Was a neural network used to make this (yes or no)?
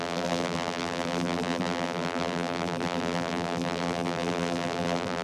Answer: yes